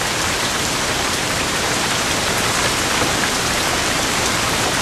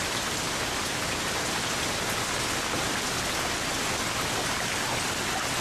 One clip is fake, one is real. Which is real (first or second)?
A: second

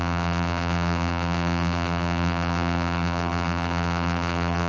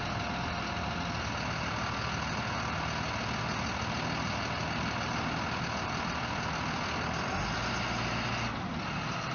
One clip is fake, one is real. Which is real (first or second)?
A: second